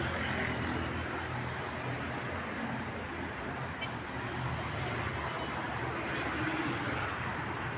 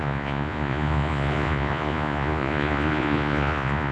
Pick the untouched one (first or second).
first